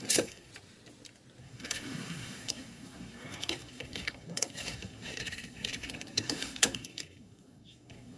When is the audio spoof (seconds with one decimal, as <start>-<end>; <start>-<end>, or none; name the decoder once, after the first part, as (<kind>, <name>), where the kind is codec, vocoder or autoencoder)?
0.0-0.5 (codec, SNAC); 1.4-8.2